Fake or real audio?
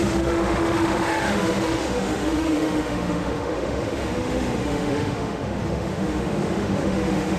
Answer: fake